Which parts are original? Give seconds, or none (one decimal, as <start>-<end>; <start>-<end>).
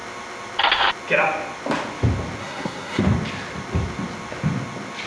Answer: 0.0-2.4; 3.0-5.1